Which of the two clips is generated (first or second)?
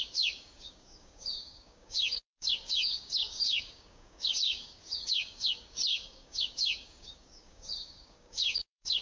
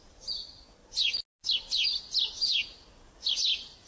first